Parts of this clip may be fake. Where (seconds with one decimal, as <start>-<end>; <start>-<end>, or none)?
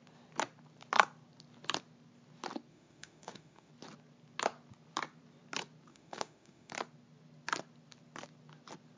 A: 2.7-3.7; 5.9-6.7